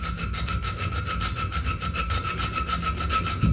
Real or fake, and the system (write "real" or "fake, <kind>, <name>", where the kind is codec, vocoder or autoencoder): real